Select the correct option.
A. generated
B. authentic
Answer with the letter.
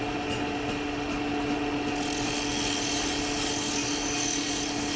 B